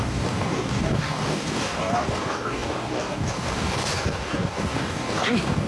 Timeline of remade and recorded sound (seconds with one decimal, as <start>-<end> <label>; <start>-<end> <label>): 0.0-5.7 remade